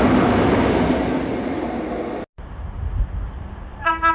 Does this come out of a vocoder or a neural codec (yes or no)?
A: no